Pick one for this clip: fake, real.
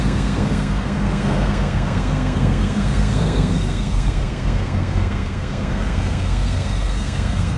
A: fake